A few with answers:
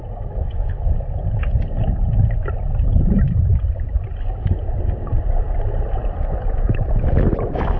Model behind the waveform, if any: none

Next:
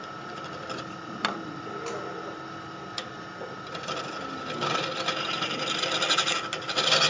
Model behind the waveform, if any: none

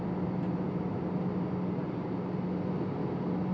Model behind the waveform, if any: none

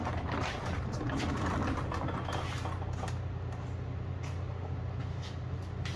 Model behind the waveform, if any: none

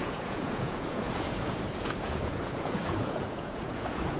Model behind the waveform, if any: vocoder, Vocos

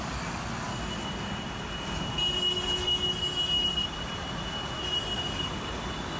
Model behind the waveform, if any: none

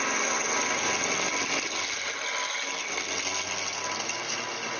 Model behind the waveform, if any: none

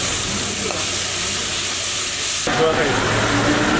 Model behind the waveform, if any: none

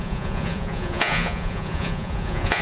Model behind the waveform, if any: vocoder, Vocos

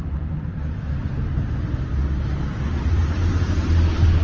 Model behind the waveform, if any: none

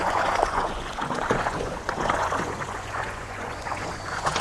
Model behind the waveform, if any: vocoder, Vocos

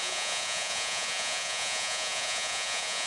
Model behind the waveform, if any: vocoder, Vocos